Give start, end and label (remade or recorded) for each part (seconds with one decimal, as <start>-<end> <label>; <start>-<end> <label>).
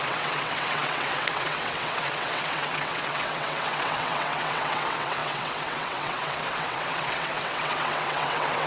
0.0-8.7 remade